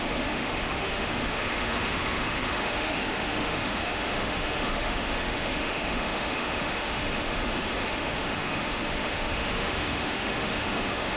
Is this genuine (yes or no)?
no